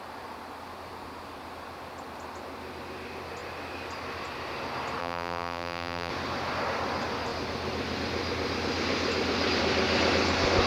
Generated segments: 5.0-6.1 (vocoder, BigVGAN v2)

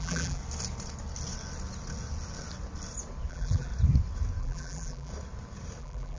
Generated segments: 0.0-0.4 (vocoder, BigVGAN v2); 3.3-3.7; 4.4-5.1; 5.8-6.2

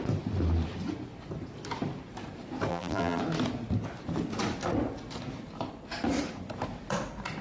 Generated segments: 2.7-3.2 (vocoder, BigVGAN v2)

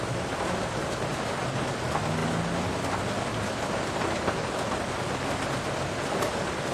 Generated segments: 1.1-1.7 (vocoder, BigVGAN v2)

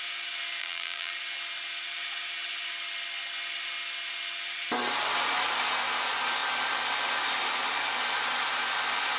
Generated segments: 0.6-1.1 (vocoder, BigVGAN v2)

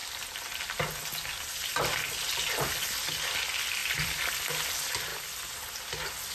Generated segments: 3.8-4.5 (vocoder, BigVGAN v2); 5.1-6.3

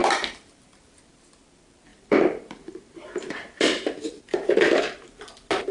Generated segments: 0.0-1.1 (vocoder, BigVGAN v2); 1.9-5.3